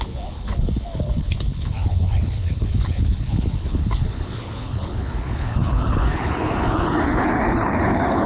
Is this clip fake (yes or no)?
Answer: yes